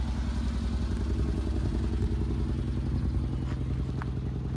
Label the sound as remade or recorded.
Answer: recorded